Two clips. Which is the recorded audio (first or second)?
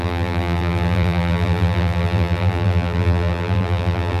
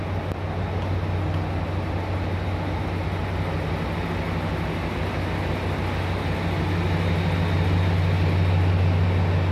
second